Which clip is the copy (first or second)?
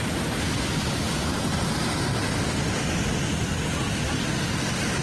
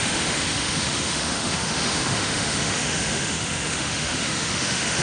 second